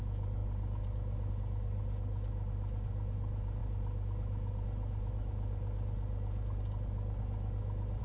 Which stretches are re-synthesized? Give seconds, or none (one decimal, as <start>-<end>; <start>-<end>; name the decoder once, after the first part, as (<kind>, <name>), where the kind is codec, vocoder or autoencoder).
none